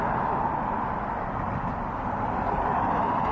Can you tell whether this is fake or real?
real